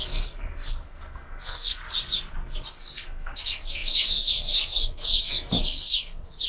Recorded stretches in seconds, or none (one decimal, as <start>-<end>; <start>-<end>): 1.8-2.7